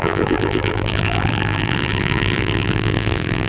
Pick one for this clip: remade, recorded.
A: remade